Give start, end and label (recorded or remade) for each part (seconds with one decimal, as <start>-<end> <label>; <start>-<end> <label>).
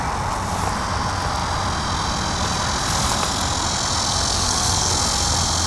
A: 0.0-4.3 recorded; 4.3-4.9 remade; 4.9-5.7 recorded